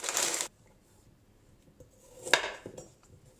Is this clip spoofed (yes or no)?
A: no